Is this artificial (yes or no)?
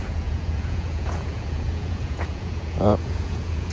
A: yes